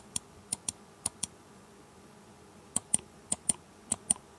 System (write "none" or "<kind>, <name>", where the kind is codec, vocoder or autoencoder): vocoder, Vocos